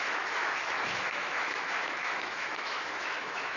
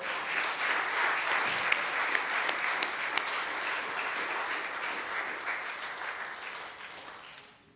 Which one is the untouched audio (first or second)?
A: second